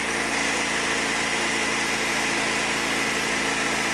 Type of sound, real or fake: real